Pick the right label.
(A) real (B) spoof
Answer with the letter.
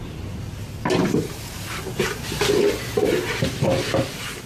A